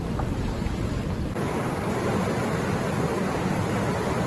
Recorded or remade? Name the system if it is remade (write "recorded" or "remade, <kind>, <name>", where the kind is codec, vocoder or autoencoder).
recorded